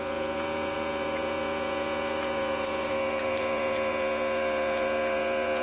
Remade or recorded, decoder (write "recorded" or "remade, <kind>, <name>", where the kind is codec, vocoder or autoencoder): remade, vocoder, Vocos